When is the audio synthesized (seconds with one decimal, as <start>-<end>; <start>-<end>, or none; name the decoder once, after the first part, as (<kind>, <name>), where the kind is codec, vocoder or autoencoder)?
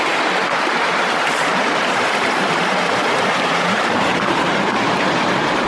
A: 1.5-4.9 (vocoder, BigVGAN v2)